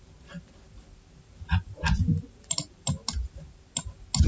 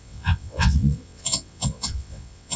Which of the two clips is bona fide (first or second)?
first